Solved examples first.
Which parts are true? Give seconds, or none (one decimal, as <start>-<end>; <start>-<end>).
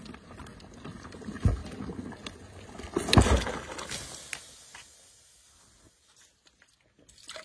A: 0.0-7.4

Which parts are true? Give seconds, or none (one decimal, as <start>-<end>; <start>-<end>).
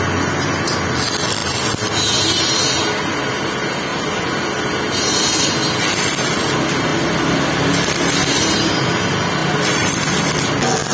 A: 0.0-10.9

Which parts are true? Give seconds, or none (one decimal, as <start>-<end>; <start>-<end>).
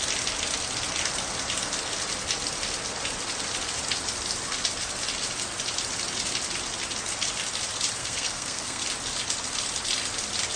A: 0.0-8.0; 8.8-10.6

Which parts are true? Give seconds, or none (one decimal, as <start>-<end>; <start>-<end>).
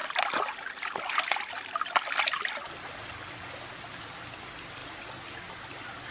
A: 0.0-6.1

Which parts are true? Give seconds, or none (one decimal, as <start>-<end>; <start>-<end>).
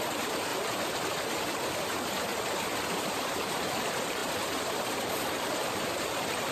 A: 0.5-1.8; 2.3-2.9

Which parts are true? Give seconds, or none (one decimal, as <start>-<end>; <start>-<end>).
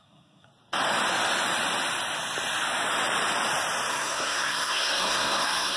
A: 0.5-3.9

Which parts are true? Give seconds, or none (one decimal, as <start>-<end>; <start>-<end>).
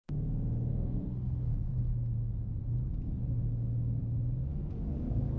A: 0.0-0.7; 1.8-4.5